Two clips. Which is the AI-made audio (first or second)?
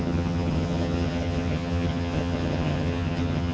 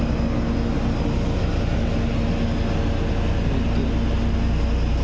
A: first